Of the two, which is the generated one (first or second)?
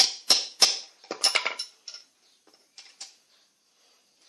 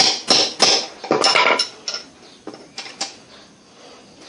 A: first